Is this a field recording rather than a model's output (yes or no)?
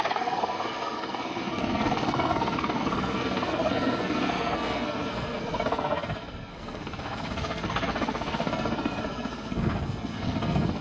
no